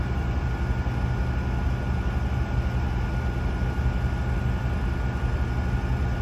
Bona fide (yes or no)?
yes